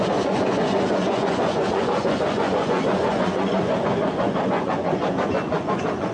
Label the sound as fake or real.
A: fake